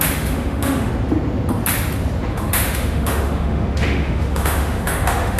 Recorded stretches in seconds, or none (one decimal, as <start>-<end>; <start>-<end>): 0.9-2.3